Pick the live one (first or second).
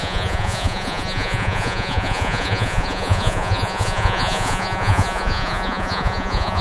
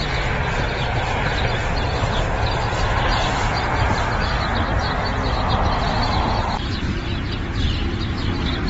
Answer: second